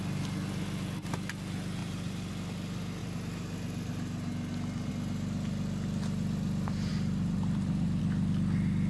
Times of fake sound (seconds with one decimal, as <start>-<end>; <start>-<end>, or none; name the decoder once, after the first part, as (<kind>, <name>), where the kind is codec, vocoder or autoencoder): 1.8-2.3 (vocoder, BigVGAN v2); 6.9-8.0